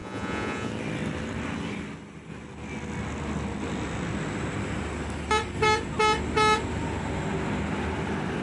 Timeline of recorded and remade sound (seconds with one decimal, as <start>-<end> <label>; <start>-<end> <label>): 0.0-0.7 remade; 0.7-8.4 recorded

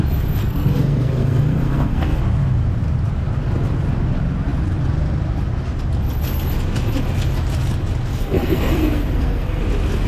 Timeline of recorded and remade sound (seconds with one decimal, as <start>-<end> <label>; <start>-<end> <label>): 0.0-0.4 recorded; 0.4-2.2 remade; 2.2-8.1 recorded; 8.1-9.6 remade; 9.6-10.1 recorded

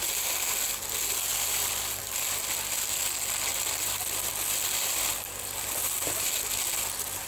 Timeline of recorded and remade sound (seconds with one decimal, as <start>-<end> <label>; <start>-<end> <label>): 0.0-3.5 recorded; 3.5-4.3 remade; 4.3-7.3 recorded